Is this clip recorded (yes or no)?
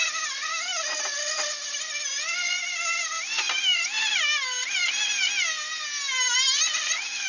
yes